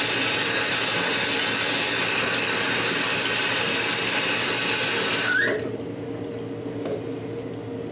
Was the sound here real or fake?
real